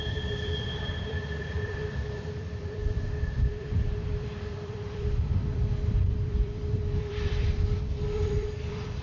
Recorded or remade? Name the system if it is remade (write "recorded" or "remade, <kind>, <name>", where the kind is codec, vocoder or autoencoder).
remade, vocoder, BigVGAN v2